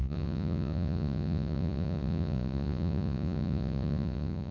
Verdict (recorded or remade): remade